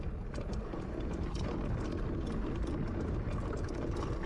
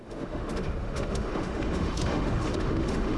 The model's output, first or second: second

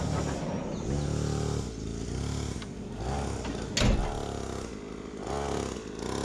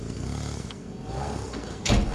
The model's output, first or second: second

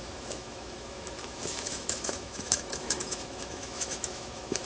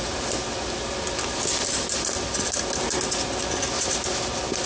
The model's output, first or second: first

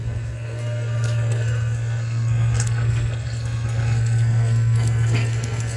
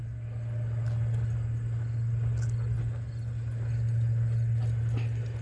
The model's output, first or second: first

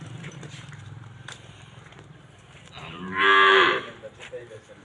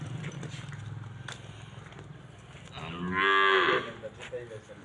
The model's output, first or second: first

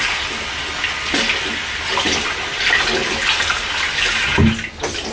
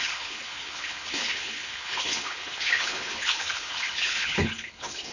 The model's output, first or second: second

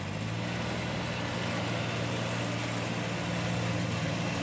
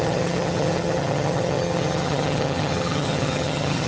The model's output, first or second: second